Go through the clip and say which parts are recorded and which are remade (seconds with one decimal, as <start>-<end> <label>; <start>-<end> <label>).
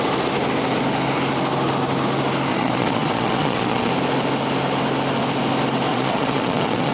0.0-2.5 recorded; 2.5-3.9 remade; 3.9-5.9 recorded; 5.9-6.9 remade